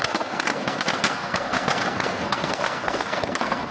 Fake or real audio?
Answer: fake